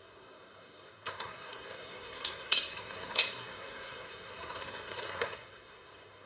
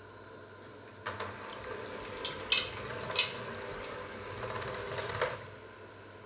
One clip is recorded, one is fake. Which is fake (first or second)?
first